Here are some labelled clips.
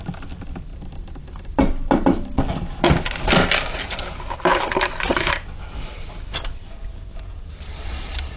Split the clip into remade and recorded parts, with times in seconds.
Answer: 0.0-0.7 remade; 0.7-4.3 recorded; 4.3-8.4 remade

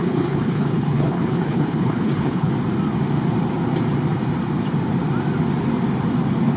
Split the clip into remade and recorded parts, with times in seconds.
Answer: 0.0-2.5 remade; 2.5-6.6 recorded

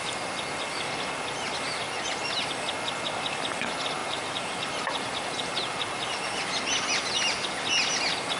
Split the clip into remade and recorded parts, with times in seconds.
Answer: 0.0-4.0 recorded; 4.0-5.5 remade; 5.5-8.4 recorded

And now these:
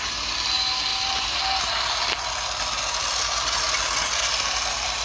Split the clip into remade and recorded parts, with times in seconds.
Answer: 0.0-0.9 recorded; 0.9-1.6 remade; 1.6-5.0 recorded